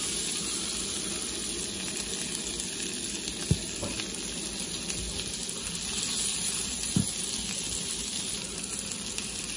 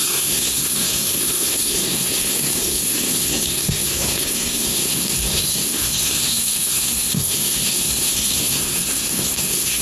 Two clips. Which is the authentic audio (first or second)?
first